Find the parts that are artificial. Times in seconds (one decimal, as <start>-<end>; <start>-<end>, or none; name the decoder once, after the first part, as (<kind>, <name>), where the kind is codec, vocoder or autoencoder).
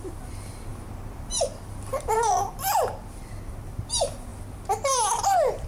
0.0-4.3 (vocoder, BigVGAN v2); 5.2-5.7